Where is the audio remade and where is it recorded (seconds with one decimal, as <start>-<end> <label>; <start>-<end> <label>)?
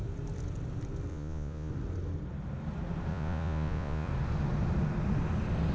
0.0-1.1 recorded; 1.1-1.7 remade; 1.7-3.1 recorded; 3.1-4.1 remade; 4.1-5.7 recorded